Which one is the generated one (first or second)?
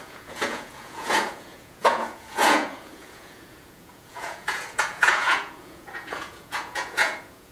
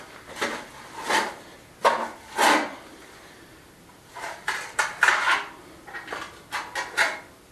first